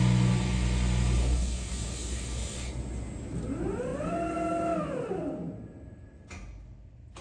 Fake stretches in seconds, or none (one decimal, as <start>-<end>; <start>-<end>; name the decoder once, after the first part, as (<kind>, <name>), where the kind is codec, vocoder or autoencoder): 1.2-2.7 (codec, DAC)